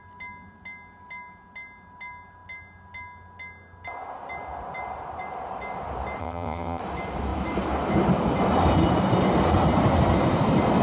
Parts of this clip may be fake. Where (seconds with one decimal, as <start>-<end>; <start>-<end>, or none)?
6.2-6.8